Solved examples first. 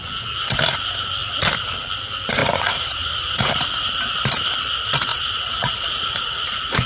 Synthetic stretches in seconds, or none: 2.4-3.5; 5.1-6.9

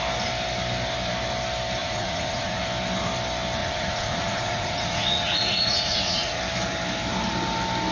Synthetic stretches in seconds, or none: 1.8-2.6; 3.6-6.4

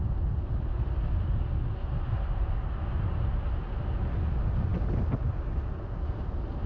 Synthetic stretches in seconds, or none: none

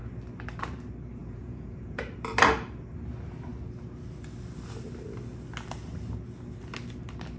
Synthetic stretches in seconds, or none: 1.2-2.0

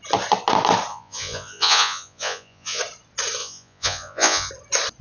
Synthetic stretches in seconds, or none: 0.9-2.8; 3.4-4.5

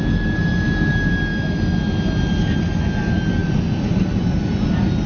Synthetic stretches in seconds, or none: none

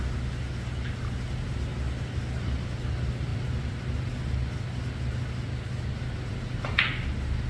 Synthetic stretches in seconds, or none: none

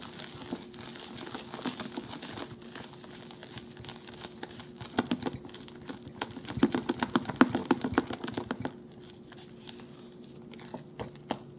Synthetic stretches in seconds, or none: none